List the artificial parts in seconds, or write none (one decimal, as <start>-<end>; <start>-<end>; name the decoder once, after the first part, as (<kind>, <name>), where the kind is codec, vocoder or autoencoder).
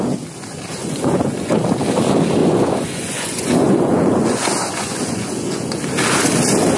0.7-1.5 (vocoder, Vocos); 2.4-5.8